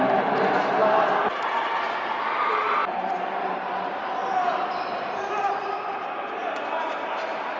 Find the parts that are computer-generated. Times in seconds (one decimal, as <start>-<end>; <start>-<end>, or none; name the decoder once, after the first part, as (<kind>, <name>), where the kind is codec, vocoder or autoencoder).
0.0-0.8 (vocoder, BigVGAN v2); 2.3-2.8; 3.4-4.2; 6.0-6.4